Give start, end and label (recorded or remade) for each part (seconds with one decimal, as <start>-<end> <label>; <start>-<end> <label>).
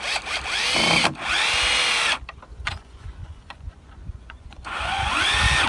0.0-2.5 recorded; 2.5-5.2 remade; 5.2-5.7 recorded